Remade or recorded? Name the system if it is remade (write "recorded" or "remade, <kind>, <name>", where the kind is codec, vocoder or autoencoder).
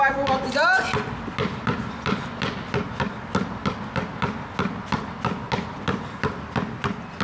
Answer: recorded